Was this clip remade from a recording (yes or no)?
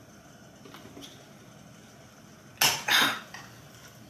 no